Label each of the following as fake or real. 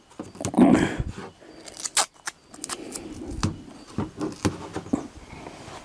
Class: real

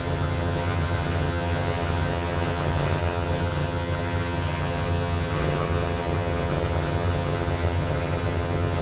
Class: fake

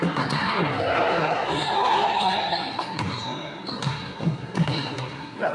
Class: fake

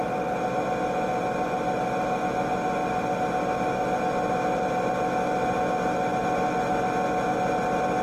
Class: real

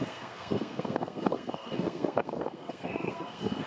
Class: fake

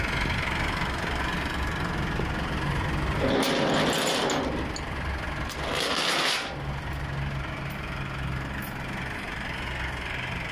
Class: real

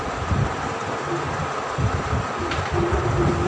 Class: real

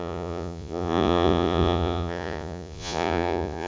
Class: fake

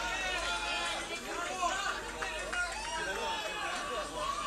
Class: real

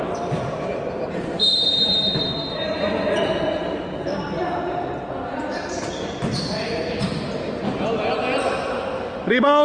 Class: real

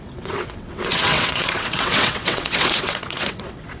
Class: fake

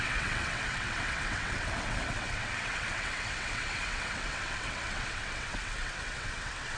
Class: fake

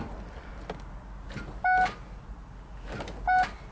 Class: real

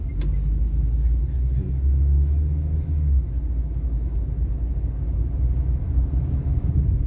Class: real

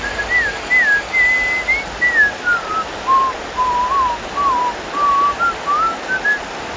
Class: real